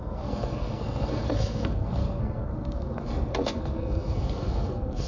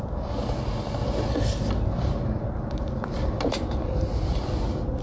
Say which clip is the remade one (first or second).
first